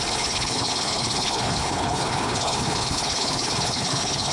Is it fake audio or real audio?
fake